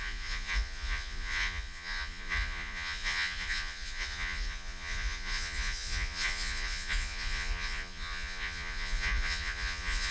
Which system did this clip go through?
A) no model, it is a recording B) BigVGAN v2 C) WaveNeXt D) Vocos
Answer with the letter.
D